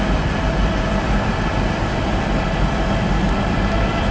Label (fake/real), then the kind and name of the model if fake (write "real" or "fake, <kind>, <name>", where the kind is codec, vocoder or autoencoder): fake, vocoder, BigVGAN v2